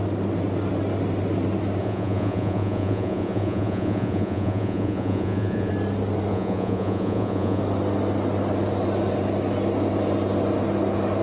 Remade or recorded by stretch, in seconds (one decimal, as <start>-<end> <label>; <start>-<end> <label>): 0.0-1.8 recorded; 1.8-5.7 remade; 5.7-6.3 recorded; 6.3-7.6 remade; 7.6-11.2 recorded